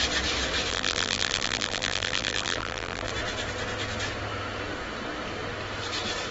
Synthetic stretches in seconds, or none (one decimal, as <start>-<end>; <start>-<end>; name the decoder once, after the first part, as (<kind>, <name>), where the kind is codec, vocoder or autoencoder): 0.7-3.1 (vocoder, BigVGAN v2)